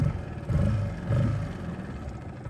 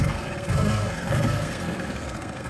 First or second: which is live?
first